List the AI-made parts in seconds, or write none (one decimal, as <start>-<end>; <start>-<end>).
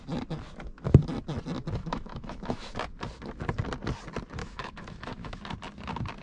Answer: 1.8-2.7; 4.4-5.4